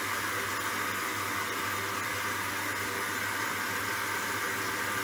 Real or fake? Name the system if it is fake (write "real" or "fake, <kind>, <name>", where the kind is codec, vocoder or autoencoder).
real